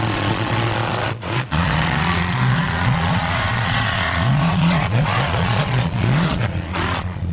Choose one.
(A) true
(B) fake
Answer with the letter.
B